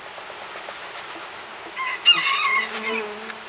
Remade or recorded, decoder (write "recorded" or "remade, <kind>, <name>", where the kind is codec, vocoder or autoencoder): recorded